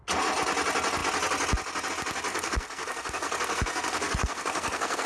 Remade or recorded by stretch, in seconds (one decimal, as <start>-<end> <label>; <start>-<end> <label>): 0.0-2.3 recorded; 2.3-5.1 remade